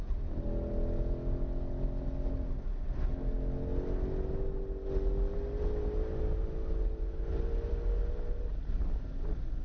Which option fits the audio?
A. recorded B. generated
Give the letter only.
A